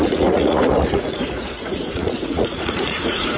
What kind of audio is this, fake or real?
fake